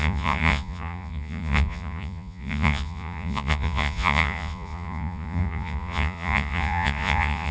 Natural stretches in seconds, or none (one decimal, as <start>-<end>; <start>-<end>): none